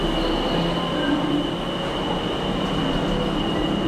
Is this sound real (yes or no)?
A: yes